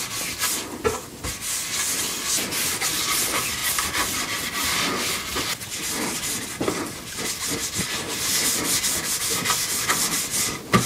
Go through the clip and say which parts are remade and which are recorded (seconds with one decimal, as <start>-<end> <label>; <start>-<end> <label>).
0.0-10.9 recorded